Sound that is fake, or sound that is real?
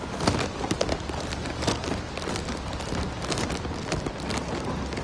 real